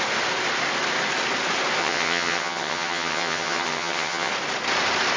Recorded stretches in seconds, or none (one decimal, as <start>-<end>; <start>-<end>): 0.0-1.8; 4.3-5.2